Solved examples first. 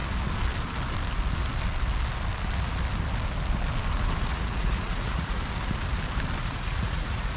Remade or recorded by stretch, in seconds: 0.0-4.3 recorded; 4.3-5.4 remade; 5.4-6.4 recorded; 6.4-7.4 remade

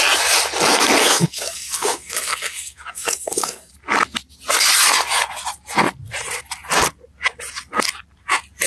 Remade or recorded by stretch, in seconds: 0.0-1.0 recorded; 1.0-3.7 remade; 3.7-8.7 recorded

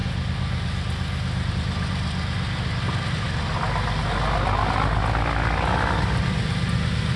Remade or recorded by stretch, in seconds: 0.0-7.2 recorded